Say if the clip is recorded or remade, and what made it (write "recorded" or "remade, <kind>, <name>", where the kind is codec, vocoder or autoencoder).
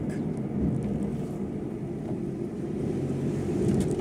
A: recorded